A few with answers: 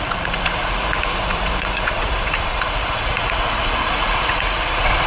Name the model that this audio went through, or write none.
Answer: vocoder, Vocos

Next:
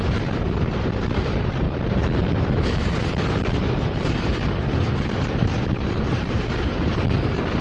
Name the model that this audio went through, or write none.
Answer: vocoder, BigVGAN v2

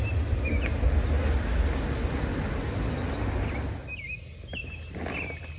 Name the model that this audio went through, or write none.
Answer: none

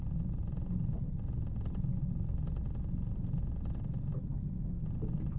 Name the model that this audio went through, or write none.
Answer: none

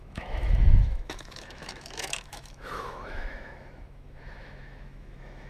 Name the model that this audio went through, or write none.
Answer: autoencoder, DAC-VAE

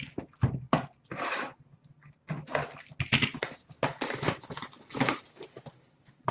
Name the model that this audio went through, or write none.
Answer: none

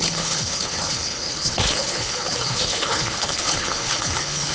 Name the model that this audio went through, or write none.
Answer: codec, HILCodec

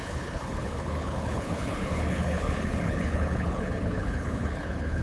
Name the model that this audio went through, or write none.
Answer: codec, HILCodec